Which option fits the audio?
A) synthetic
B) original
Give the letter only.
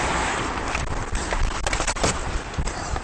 B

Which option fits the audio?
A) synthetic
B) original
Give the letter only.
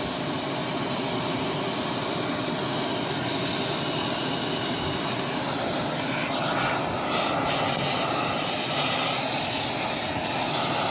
B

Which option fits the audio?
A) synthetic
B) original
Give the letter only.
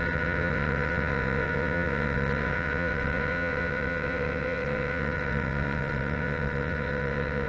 A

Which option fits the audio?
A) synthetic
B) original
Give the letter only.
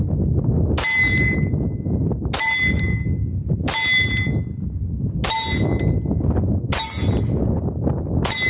B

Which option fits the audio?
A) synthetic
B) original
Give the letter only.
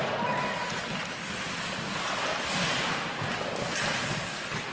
B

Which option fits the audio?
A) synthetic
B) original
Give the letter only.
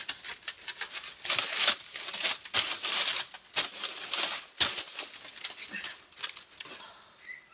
B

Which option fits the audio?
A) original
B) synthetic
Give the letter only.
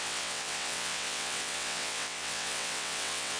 B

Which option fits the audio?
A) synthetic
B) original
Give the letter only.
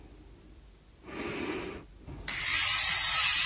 B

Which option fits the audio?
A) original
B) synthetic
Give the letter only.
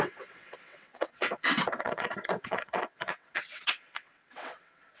B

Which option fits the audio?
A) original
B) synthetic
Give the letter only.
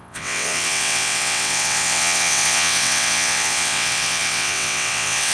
B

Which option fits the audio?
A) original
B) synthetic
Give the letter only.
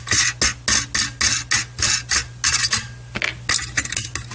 A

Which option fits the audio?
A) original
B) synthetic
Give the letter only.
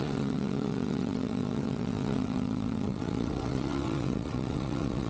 B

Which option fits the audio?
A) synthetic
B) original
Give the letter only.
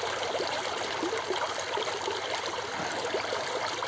B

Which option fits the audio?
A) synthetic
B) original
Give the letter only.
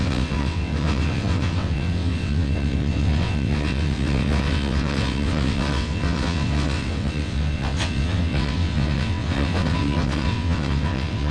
A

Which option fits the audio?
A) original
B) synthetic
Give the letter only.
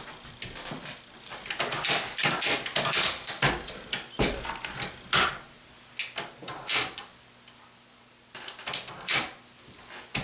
A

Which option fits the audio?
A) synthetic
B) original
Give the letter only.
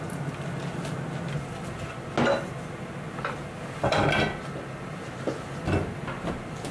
B